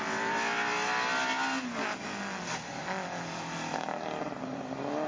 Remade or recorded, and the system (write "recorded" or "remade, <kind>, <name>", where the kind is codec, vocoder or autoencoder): recorded